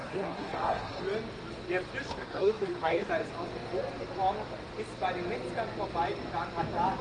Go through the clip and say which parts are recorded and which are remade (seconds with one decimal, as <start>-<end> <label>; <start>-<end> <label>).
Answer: 0.0-1.0 remade; 1.0-2.1 recorded; 2.1-3.1 remade; 3.1-7.0 recorded